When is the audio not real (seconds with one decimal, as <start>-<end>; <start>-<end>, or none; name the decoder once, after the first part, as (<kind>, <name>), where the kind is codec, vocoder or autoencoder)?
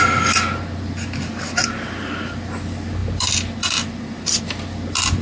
none